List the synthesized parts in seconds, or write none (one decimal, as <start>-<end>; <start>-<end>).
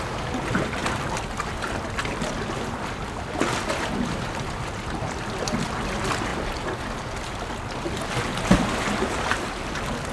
0.8-3.3